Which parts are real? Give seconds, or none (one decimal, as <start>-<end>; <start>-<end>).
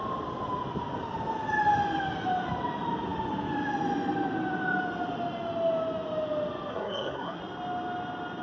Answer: 0.0-6.7; 7.4-8.4